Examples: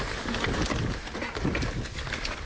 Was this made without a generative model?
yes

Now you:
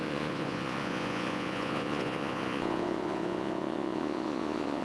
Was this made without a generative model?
no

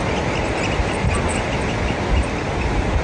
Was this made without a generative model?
yes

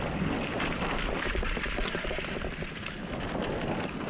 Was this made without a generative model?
yes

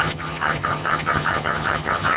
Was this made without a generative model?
no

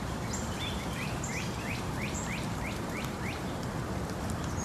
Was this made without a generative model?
no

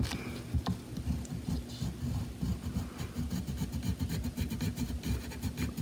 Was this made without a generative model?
yes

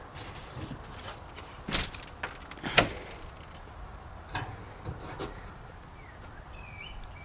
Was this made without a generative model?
yes